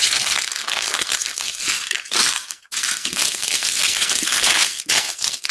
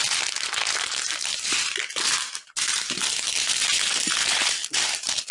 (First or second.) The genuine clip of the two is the second